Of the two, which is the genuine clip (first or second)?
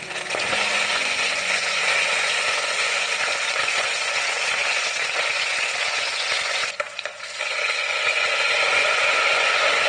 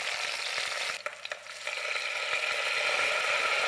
second